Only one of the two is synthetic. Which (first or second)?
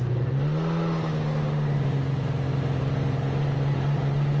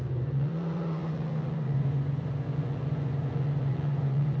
second